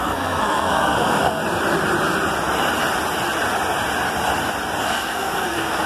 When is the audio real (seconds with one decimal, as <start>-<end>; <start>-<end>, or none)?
1.4-4.8